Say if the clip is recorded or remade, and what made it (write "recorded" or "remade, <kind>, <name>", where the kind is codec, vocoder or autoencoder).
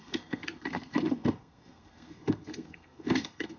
remade, codec, SNAC